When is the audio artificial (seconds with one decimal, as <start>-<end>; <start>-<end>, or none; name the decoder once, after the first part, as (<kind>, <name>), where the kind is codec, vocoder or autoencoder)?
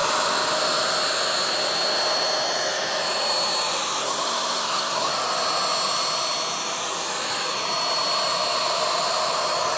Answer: 4.0-5.1 (codec, SNAC)